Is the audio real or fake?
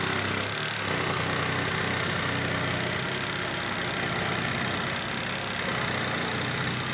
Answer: real